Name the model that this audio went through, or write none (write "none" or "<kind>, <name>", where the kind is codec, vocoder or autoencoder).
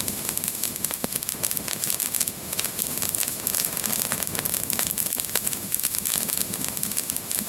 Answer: autoencoder, DAC-VAE